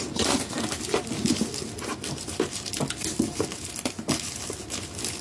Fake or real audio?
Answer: real